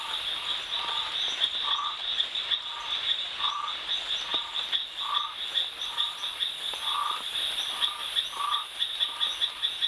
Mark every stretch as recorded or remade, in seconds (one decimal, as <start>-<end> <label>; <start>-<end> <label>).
0.0-9.9 recorded